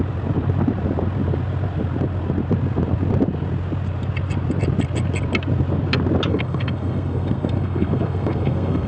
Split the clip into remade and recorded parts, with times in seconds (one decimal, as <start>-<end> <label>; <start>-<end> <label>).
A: 0.0-6.3 recorded; 6.3-8.9 remade